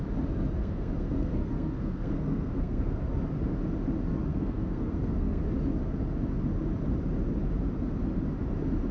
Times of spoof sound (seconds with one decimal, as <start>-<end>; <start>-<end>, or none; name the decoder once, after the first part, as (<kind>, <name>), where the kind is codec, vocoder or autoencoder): 0.6-3.1 (codec, SNAC); 4.3-5.4